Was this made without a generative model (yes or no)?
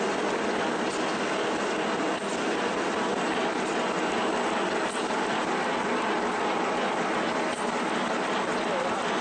yes